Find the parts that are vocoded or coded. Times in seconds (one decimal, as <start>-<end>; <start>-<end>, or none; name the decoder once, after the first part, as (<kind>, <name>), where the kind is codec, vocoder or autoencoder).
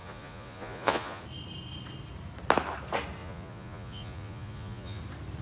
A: 0.0-1.2 (vocoder, Vocos); 3.2-5.0